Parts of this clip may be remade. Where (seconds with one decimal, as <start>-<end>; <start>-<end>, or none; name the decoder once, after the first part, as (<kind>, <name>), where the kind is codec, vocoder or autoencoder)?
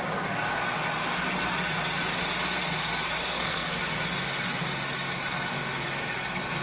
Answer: 3.2-3.8 (codec, SNAC)